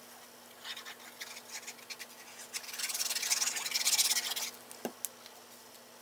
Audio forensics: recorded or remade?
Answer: recorded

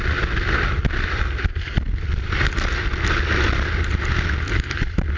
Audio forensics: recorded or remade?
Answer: recorded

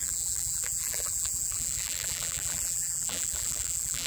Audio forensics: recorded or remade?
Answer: remade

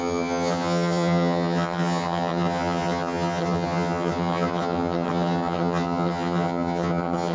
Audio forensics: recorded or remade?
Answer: remade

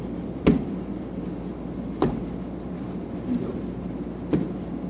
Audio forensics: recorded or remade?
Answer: recorded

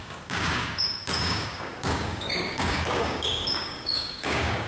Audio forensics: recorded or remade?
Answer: remade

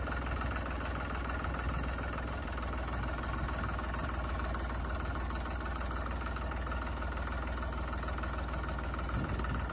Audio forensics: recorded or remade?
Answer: recorded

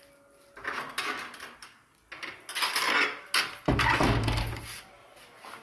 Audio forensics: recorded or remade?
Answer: recorded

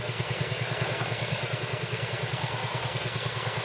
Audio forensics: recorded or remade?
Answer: remade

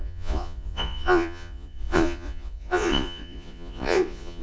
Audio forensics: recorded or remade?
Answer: remade